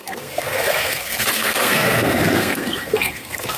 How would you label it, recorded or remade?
remade